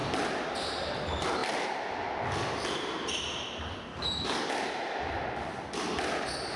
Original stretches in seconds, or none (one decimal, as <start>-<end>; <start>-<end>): 0.0-3.9; 4.5-6.6